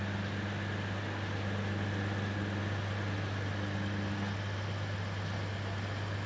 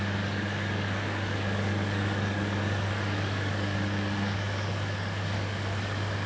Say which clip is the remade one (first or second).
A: second